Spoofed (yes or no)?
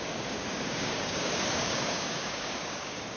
yes